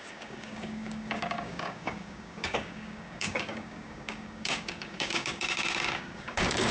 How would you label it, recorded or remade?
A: remade